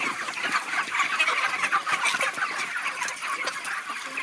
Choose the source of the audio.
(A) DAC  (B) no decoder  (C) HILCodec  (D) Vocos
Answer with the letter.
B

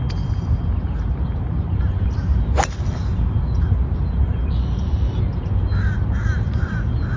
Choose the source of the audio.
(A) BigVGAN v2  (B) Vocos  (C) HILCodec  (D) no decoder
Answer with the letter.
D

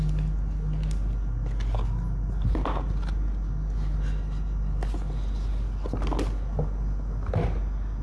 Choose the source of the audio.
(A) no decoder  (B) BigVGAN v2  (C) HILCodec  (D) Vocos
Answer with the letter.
A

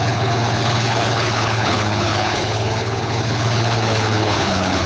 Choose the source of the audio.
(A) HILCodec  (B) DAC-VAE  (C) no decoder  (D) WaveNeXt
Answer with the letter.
A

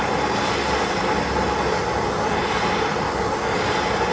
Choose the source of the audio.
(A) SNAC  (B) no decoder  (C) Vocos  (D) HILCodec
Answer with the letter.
B